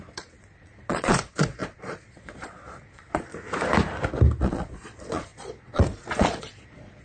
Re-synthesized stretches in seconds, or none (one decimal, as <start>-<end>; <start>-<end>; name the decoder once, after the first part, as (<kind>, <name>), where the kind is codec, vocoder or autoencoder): 0.0-3.3 (vocoder, Vocos); 4.4-7.0

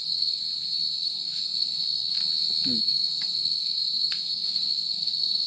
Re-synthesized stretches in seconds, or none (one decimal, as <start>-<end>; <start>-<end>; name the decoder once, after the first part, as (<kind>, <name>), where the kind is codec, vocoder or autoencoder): 0.0-0.4 (codec, SNAC); 0.9-2.2; 2.8-5.5

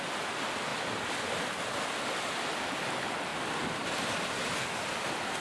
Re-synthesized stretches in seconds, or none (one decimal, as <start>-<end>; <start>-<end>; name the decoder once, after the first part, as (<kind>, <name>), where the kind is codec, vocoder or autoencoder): none

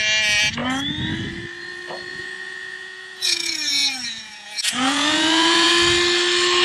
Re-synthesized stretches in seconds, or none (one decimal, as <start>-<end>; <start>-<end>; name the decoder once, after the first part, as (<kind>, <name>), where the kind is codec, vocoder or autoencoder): 2.1-5.7 (vocoder, Vocos)

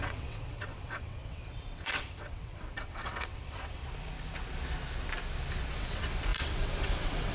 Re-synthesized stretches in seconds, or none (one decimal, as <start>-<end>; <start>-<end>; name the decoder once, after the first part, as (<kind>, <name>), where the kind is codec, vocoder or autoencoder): 0.0-3.8 (vocoder, WaveNeXt); 5.7-7.3

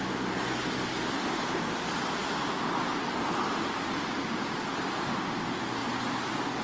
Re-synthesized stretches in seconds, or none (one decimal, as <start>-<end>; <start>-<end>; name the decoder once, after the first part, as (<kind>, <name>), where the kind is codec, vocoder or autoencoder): none

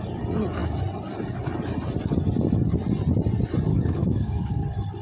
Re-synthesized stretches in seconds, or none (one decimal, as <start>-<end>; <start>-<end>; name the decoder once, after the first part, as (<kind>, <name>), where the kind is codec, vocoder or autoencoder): 3.7-4.6 (codec, DAC)